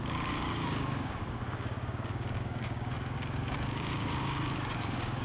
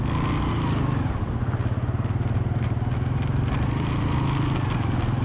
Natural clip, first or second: second